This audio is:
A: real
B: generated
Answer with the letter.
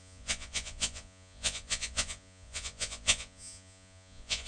B